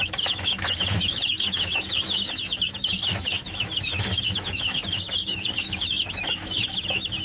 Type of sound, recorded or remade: remade